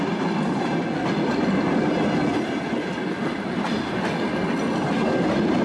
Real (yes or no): yes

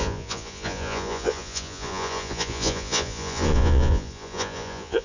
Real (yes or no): no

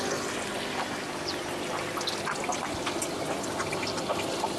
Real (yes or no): yes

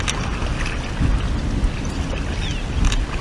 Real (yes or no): yes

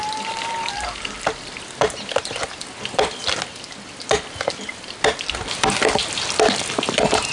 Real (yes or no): yes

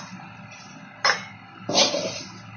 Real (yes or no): yes